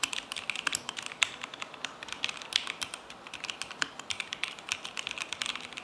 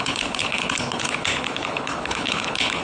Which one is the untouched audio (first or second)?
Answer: first